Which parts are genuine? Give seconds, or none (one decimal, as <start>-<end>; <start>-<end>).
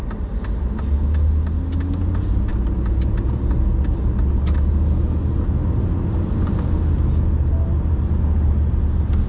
0.0-9.3